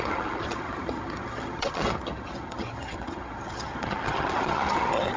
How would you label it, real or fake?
fake